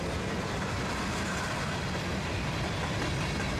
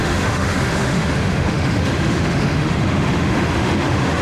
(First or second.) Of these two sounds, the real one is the first